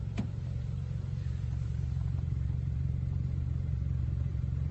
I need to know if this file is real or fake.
fake